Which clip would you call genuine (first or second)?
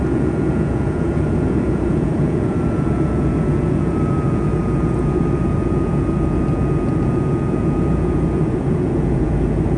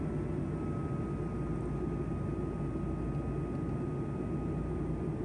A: second